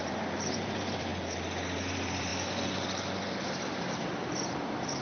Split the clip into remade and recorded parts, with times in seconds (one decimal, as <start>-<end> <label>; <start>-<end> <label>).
0.0-1.1 remade; 1.1-1.9 recorded; 1.9-2.3 remade; 2.3-3.8 recorded; 3.8-5.0 remade

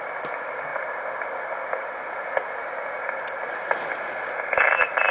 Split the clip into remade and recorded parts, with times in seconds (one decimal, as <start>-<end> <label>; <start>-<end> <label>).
0.0-0.7 recorded; 0.7-3.8 remade; 3.8-5.1 recorded

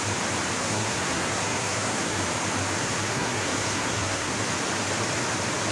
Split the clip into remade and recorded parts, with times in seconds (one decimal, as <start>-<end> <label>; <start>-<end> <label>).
0.0-0.6 recorded; 0.6-2.2 remade; 2.2-2.8 recorded; 2.8-4.4 remade; 4.4-5.7 recorded

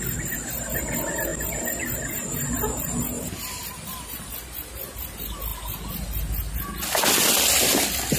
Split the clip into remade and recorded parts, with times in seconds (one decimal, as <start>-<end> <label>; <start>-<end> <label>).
0.0-8.2 recorded

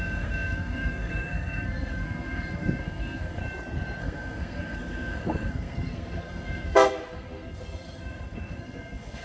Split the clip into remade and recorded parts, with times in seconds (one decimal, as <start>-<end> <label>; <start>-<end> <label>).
0.0-3.4 remade; 3.4-4.0 recorded; 4.0-9.2 remade

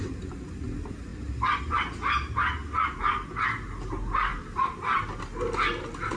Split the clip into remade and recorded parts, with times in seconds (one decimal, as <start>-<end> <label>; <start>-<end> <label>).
0.0-6.2 recorded